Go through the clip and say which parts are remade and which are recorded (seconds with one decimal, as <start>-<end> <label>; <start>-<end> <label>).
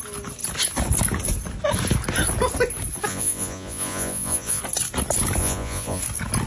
0.0-3.1 recorded; 3.1-4.6 remade; 4.6-5.4 recorded; 5.4-6.0 remade; 6.0-6.5 recorded